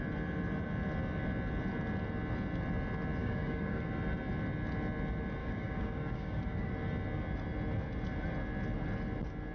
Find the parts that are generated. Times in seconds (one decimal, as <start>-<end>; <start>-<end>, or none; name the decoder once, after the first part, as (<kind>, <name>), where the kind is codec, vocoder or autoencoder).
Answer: 3.2-3.8 (codec, DAC); 5.4-6.7